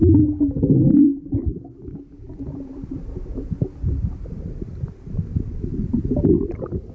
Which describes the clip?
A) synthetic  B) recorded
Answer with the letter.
B